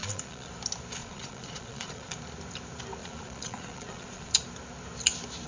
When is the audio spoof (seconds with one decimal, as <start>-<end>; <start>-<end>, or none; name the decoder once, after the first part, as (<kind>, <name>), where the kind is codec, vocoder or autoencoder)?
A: 0.0-0.5 (vocoder, Vocos); 1.0-2.1; 3.0-4.3